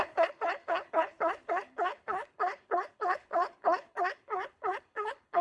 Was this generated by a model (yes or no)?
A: yes